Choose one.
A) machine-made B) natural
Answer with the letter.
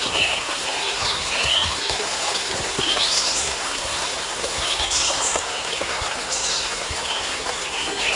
A